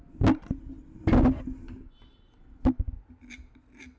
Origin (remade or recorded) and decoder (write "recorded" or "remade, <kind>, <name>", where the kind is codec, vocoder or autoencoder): recorded